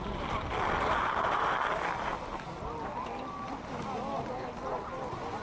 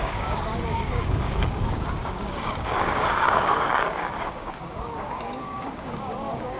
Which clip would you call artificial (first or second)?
second